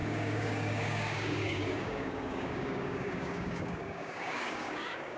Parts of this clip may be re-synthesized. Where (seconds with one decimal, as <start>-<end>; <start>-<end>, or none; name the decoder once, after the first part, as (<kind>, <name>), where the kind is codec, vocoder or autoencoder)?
0.0-5.2 (codec, DAC)